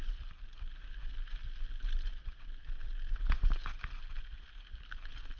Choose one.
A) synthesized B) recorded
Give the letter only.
B